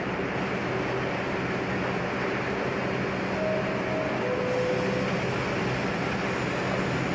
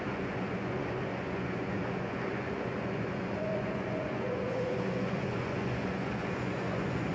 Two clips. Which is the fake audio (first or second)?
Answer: second